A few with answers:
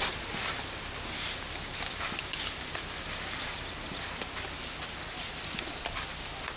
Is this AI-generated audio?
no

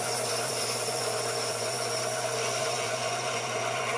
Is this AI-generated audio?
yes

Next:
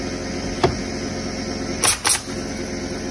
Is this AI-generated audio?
no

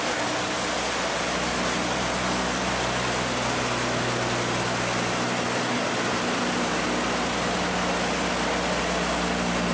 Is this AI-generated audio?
no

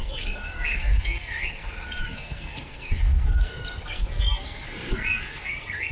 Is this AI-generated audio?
yes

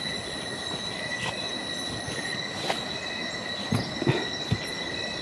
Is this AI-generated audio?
no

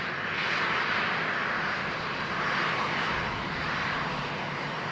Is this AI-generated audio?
no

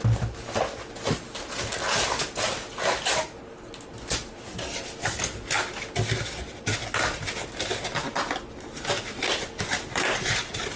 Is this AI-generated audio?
no